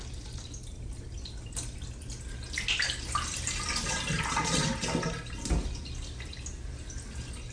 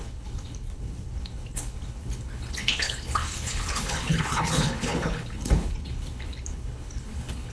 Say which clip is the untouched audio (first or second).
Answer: first